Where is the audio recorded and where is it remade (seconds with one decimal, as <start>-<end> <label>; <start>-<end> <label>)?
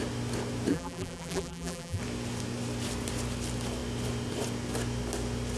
0.0-0.7 recorded; 0.7-2.0 remade; 2.0-5.6 recorded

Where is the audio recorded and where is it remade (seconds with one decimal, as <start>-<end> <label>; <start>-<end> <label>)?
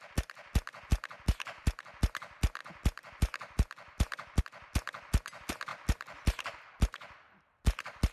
0.0-2.6 recorded; 2.6-4.4 remade; 4.4-5.7 recorded; 5.7-6.5 remade; 6.5-8.1 recorded